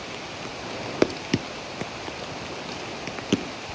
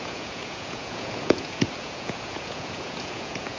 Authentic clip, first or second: first